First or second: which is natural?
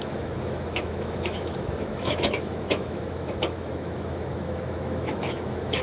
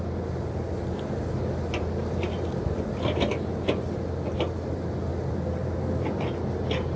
second